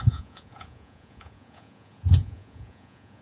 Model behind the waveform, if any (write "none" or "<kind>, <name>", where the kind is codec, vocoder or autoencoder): vocoder, Vocos